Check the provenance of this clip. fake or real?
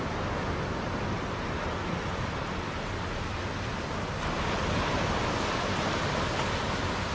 real